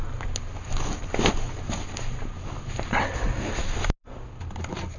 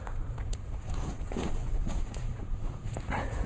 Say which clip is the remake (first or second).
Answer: second